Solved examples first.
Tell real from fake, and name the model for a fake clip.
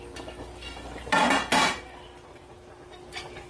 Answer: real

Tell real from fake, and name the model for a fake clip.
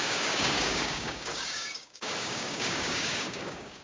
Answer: fake, codec, DAC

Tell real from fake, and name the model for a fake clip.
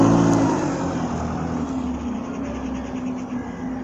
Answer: real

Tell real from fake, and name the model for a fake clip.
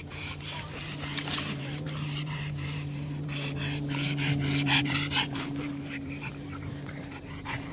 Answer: fake, vocoder, BigVGAN v2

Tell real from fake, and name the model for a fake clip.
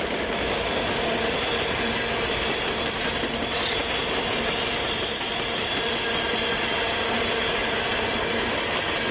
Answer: real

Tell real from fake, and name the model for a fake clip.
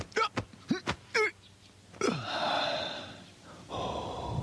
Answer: real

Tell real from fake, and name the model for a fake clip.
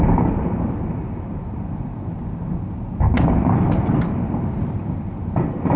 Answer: real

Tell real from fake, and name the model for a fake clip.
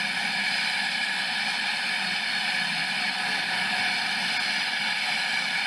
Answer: real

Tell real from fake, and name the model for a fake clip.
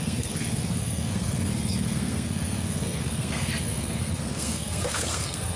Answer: fake, codec, SNAC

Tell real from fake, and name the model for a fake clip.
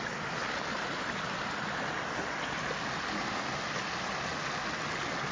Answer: real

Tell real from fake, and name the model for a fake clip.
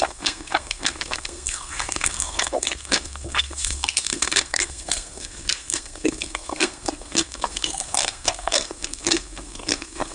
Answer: fake, codec, SNAC